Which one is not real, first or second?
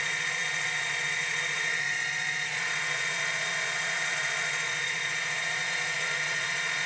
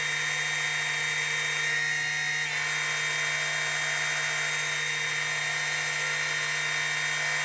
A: first